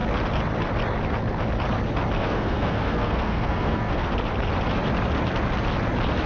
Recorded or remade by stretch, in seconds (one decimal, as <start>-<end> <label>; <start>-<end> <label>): 0.0-2.2 recorded; 2.2-4.1 remade; 4.1-6.3 recorded